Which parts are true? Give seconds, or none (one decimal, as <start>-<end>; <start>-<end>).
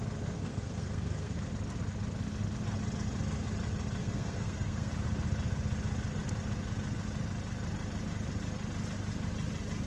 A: 0.0-0.4; 1.5-4.0; 4.9-9.9